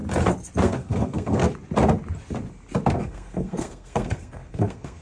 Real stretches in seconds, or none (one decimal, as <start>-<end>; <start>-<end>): 0.0-0.6; 1.4-3.0